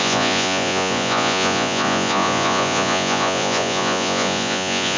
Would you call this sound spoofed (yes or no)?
yes